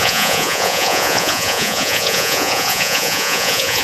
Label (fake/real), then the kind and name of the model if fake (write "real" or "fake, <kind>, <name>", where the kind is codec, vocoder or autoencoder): fake, vocoder, Vocos